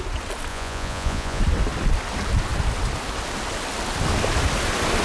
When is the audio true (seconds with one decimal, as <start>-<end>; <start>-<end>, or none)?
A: 0.0-0.5; 1.4-5.0